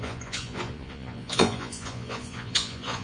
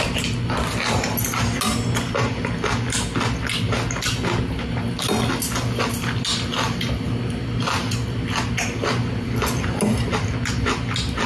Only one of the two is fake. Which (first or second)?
first